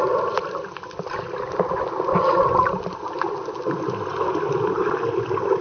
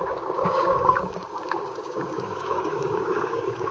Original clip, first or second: first